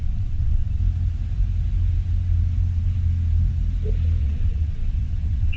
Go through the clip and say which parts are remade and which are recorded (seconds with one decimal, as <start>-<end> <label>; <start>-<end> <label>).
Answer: 0.0-0.8 remade; 0.8-4.2 recorded; 4.2-5.6 remade